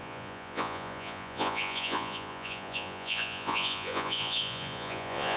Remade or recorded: remade